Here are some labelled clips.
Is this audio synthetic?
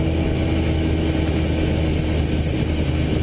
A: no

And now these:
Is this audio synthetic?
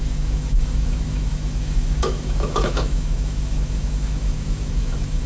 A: yes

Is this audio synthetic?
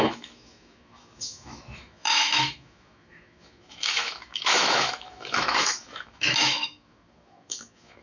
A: yes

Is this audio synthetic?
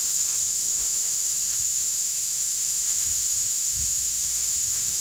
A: yes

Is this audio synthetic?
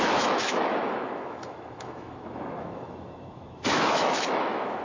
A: yes